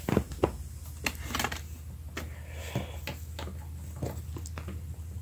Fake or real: real